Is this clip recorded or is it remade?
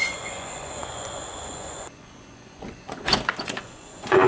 remade